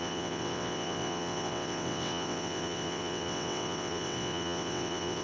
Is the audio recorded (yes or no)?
no